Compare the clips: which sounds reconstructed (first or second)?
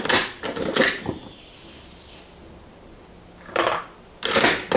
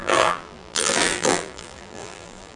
second